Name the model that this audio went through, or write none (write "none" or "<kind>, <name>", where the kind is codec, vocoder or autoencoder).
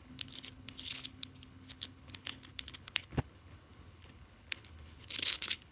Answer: codec, HILCodec